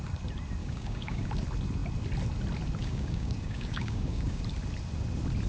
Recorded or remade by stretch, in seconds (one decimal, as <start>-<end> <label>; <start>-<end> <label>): 0.0-0.6 recorded; 0.6-1.3 remade; 1.3-2.8 recorded; 2.8-4.4 remade; 4.4-5.5 recorded